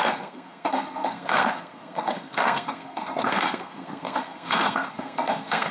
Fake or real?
fake